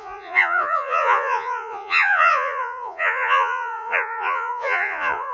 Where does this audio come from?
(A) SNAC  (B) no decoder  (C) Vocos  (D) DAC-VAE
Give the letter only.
C